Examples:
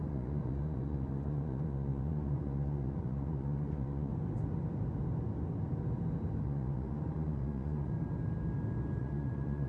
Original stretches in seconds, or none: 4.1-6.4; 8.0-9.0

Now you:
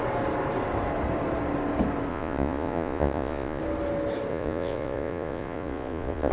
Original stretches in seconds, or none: 0.0-2.1; 3.6-4.3